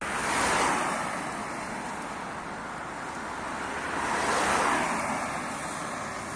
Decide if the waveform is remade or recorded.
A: recorded